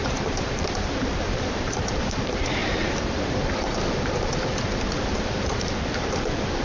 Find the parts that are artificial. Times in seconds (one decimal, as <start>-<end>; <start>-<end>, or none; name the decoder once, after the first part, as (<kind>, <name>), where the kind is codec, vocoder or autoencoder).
0.0-6.6 (vocoder, BigVGAN v2)